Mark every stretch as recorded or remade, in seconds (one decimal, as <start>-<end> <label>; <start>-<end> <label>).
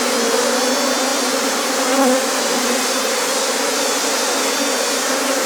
0.0-5.5 recorded